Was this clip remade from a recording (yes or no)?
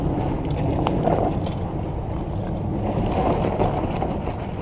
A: no